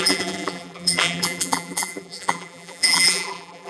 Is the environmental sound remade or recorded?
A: remade